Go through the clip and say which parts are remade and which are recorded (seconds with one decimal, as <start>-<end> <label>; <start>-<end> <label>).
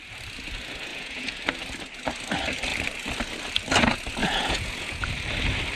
0.0-0.9 recorded; 0.9-1.4 remade; 1.4-4.2 recorded; 4.2-5.1 remade; 5.1-5.8 recorded